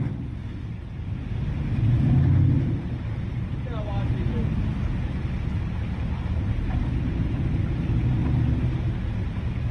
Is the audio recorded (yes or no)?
yes